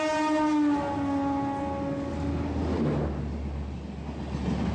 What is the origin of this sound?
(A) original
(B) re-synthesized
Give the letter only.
A